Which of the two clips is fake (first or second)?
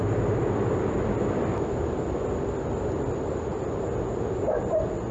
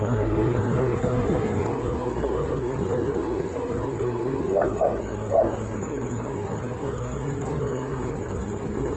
second